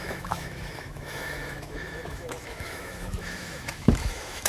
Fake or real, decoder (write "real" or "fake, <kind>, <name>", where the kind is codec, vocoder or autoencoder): fake, autoencoder, DAC-VAE